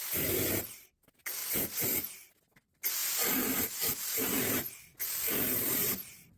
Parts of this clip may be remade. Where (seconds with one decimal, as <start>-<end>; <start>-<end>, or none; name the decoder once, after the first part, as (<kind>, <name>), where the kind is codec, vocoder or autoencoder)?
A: none